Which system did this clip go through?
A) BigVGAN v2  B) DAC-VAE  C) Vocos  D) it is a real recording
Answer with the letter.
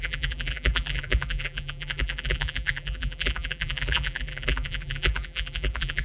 A